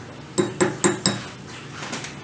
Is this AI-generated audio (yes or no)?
no